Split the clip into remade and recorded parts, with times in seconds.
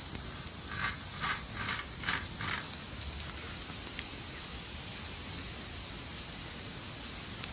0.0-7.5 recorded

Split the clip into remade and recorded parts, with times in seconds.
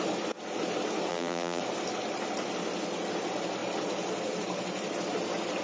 0.0-1.1 recorded; 1.1-1.6 remade; 1.6-5.6 recorded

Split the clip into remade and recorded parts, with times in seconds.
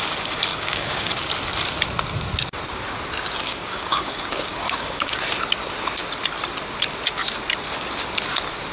0.0-0.5 recorded; 0.5-1.1 remade; 1.1-3.4 recorded; 3.4-5.2 remade; 5.2-8.7 recorded